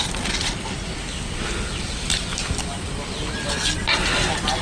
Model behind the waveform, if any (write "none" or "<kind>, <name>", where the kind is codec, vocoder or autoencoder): none